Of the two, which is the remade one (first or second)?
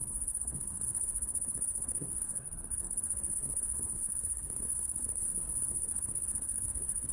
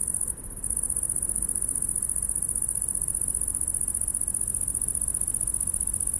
first